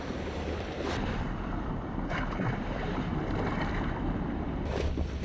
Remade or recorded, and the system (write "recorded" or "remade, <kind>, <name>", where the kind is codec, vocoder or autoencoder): remade, vocoder, BigVGAN v2